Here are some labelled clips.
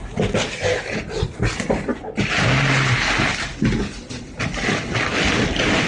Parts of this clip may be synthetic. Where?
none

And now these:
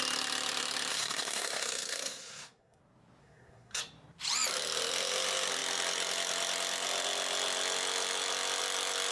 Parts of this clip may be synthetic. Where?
0.9-2.8 (codec, SNAC); 3.2-3.8